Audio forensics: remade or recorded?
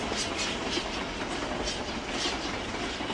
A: recorded